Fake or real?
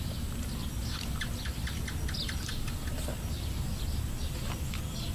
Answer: real